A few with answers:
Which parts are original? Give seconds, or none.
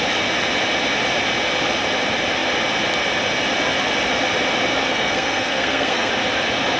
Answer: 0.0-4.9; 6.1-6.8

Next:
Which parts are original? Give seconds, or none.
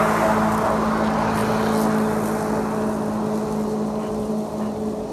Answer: 0.0-5.1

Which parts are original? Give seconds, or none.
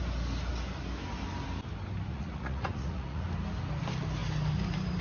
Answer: 0.0-2.1; 3.2-5.0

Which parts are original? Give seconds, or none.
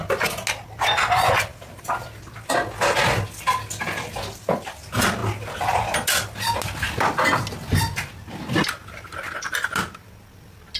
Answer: 0.0-10.8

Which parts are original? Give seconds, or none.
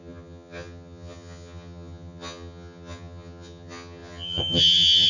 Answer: none